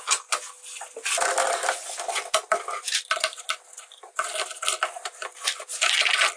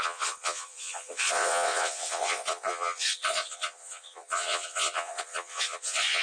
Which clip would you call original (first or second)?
first